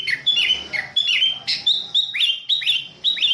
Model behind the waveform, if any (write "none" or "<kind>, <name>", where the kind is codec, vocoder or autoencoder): none